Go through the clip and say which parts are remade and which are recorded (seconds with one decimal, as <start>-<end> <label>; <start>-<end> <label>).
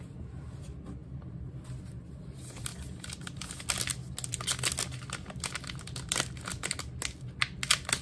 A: 0.0-8.0 recorded